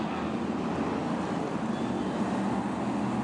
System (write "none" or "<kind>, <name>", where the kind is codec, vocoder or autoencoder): none